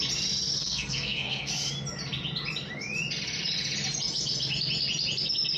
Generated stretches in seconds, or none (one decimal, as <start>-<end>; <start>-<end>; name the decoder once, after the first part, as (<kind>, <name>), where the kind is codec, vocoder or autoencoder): 0.6-1.5 (codec, SNAC)